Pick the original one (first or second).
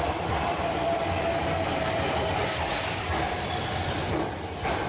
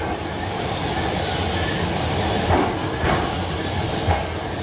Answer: second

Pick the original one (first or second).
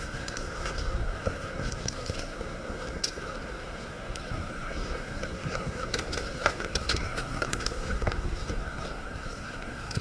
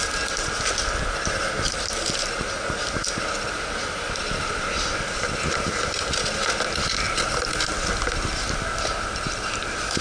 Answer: second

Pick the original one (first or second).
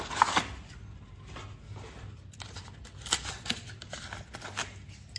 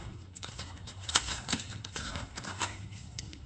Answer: first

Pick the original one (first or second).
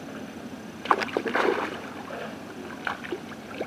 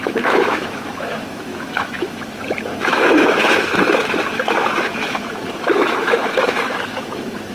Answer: first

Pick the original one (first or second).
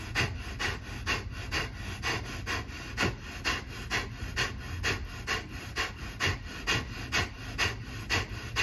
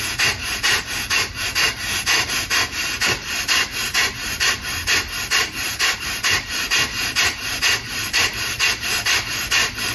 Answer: first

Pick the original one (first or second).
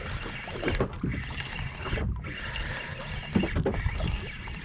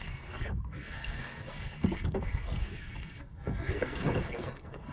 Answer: first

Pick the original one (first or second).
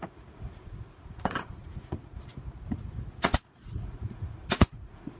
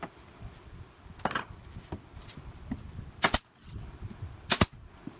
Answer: second